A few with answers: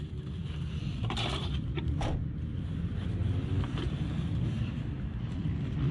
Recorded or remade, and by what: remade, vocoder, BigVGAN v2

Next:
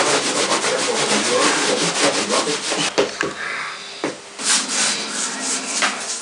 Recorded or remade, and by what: recorded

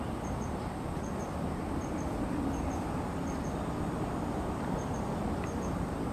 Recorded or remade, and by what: remade, vocoder, BigVGAN v2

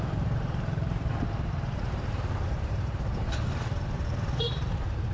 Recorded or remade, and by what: remade, vocoder, BigVGAN v2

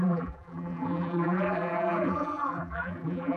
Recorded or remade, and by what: remade, vocoder, BigVGAN v2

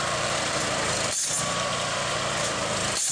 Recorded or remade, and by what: remade, vocoder, BigVGAN v2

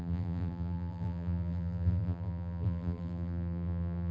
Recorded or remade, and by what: remade, vocoder, BigVGAN v2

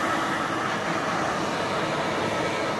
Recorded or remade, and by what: recorded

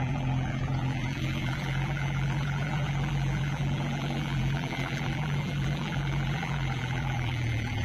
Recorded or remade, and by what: remade, vocoder, BigVGAN v2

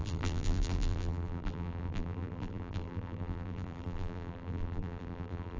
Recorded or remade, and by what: remade, vocoder, BigVGAN v2